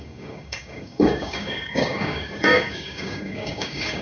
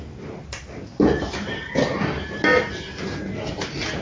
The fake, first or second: first